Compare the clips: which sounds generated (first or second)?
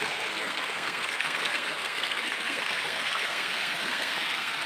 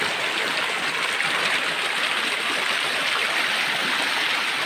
first